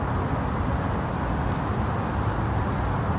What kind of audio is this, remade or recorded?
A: recorded